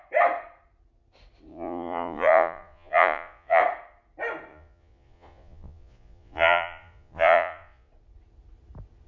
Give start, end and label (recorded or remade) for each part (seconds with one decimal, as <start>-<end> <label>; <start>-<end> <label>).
0.0-1.5 recorded; 1.5-3.6 remade; 3.6-4.5 recorded; 4.5-7.9 remade; 7.9-9.1 recorded